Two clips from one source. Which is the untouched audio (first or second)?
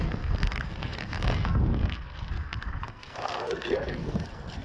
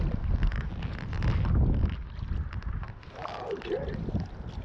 second